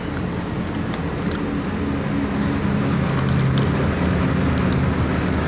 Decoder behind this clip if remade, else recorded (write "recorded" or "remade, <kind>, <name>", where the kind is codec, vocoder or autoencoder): recorded